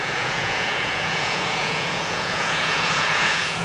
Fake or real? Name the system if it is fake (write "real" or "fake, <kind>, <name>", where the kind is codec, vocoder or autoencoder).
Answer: fake, vocoder, Vocos